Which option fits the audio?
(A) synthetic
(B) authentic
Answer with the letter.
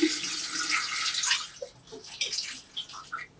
B